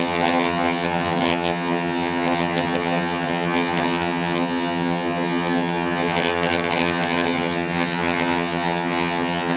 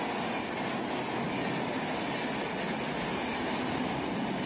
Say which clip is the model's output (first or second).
first